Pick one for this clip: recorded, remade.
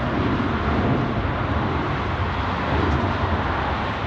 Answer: recorded